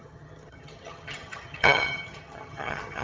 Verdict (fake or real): fake